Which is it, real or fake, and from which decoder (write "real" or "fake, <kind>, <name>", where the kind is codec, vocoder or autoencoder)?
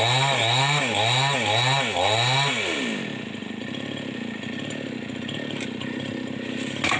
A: real